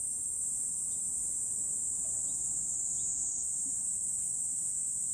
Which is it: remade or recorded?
recorded